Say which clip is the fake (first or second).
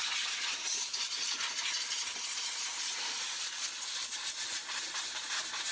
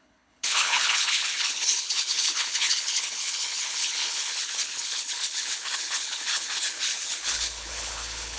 second